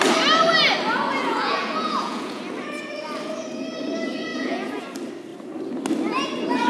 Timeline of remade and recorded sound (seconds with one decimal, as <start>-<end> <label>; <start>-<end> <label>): 0.0-1.2 recorded; 1.2-2.4 remade; 2.4-4.3 recorded; 4.3-4.8 remade; 4.8-6.7 recorded